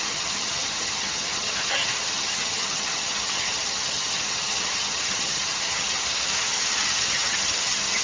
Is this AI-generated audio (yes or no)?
yes